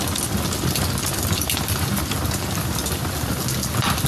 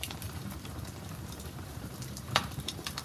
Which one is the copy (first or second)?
second